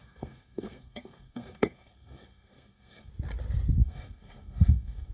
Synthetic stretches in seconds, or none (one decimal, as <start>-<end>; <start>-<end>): 0.0-3.1; 3.8-5.1